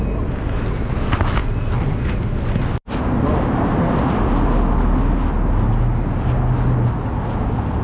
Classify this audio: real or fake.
real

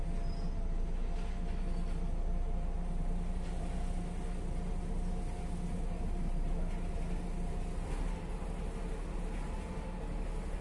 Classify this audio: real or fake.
real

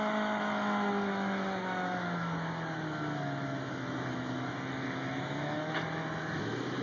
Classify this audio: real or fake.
fake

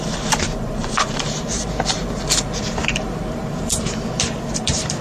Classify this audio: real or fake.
fake